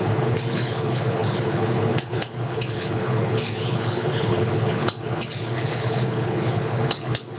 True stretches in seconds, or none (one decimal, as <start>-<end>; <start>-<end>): none

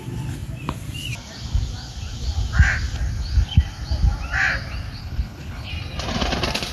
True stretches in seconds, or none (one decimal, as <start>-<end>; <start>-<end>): 0.0-5.0; 5.7-6.7

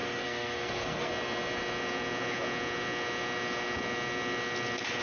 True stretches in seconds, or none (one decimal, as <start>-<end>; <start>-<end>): 1.1-5.0

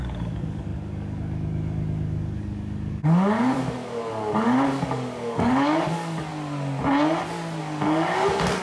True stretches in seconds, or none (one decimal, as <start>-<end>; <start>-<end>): 6.3-7.6

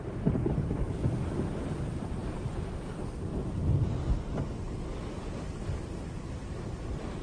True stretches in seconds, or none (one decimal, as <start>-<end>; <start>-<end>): 0.0-7.2

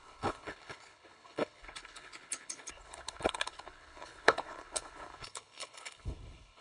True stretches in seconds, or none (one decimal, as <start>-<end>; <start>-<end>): none